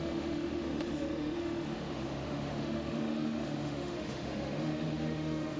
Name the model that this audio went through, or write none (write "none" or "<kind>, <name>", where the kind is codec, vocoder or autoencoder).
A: autoencoder, DAC-VAE